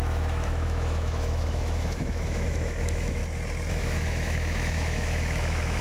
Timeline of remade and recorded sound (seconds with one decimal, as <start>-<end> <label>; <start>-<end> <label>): 0.0-3.2 remade; 3.2-3.7 recorded; 3.7-5.8 remade